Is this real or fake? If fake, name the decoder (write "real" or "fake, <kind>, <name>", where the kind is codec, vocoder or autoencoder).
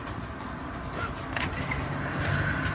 real